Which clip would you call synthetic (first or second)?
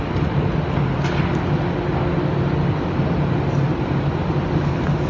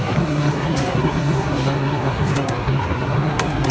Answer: second